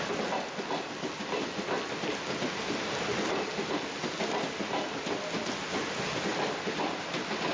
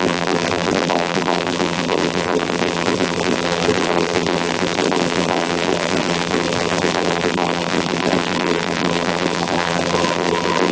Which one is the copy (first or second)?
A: second